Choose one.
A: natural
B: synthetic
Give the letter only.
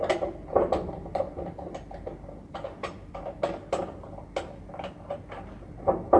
A